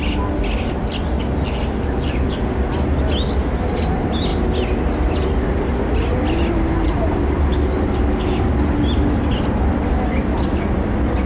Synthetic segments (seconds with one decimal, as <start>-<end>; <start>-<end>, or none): none